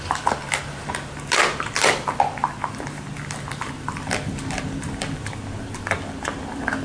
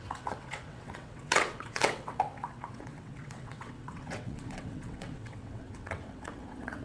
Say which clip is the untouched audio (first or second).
first